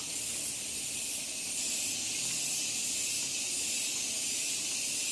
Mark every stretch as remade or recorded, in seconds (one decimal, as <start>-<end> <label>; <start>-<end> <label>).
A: 0.0-1.3 remade; 1.3-4.4 recorded; 4.4-5.1 remade